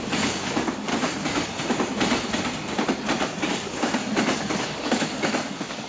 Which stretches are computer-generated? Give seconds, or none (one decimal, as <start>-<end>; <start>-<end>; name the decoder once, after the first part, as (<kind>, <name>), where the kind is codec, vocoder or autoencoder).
0.0-0.9 (codec, DAC); 3.5-4.0; 4.6-5.9